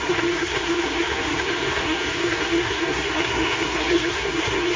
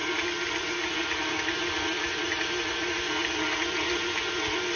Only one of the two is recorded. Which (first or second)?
second